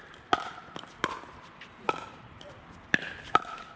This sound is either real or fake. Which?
real